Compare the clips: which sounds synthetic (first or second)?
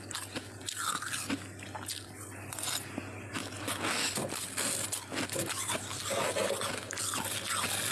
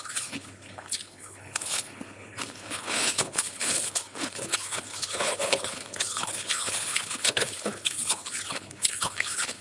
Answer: second